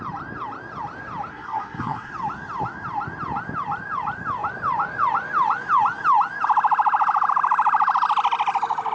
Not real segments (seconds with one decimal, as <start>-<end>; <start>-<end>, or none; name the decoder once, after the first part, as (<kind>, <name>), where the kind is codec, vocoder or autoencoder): 1.3-2.1 (codec, SNAC)